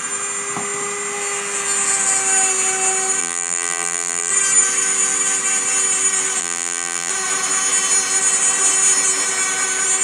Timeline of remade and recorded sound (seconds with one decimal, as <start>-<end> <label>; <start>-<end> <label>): 0.0-3.2 recorded; 3.2-4.3 remade; 4.3-6.4 recorded; 6.4-7.1 remade; 7.1-10.0 recorded